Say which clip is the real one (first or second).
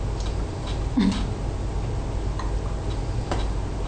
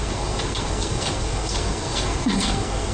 first